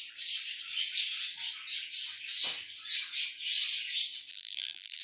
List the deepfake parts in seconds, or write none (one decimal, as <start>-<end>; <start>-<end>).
4.3-5.0